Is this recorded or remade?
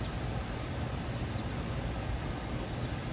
recorded